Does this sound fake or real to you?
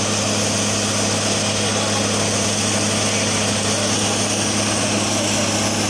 real